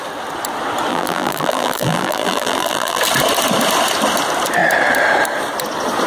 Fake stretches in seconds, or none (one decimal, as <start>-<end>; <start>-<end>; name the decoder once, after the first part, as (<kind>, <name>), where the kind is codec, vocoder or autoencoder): 0.9-3.0 (vocoder, BigVGAN v2)